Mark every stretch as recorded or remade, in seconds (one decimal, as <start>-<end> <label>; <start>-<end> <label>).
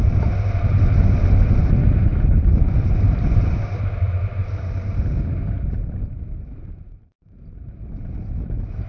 0.0-2.1 recorded; 2.1-3.5 remade; 3.5-8.9 recorded